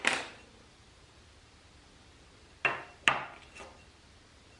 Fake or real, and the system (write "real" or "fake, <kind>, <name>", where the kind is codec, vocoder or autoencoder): real